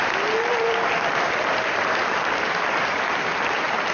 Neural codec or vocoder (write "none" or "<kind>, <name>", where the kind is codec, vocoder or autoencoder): none